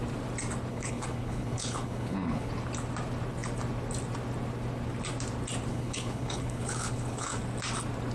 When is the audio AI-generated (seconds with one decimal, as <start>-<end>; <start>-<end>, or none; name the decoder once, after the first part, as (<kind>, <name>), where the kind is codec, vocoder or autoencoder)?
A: 0.7-2.5 (codec, HILCodec); 5.7-7.4